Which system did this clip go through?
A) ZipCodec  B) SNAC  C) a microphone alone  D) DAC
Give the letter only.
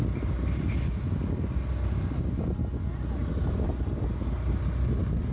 C